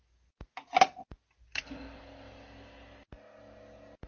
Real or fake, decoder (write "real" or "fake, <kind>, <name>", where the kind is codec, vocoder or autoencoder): real